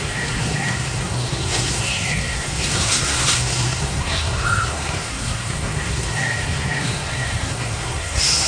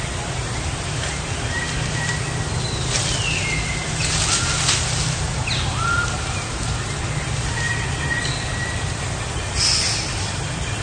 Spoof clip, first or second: first